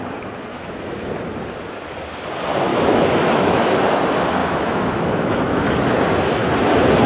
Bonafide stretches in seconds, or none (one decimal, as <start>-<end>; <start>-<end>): 0.0-0.5; 1.1-2.7; 3.7-4.4; 5.6-7.1